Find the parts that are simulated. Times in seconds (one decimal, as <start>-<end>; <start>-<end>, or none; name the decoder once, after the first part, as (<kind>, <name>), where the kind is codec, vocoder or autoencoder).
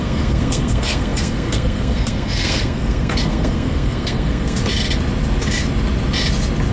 0.0-4.6 (codec, SNAC)